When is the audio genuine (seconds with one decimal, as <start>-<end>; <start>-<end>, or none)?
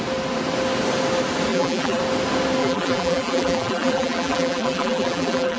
0.0-1.5; 2.0-2.6